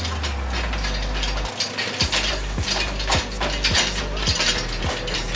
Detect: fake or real real